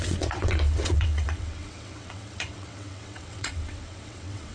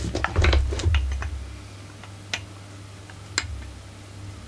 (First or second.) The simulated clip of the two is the first